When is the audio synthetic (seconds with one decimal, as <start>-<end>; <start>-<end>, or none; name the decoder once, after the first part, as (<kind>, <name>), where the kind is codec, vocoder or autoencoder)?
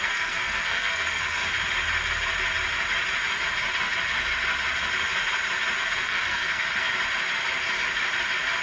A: 0.0-1.4 (codec, SNAC); 5.8-7.0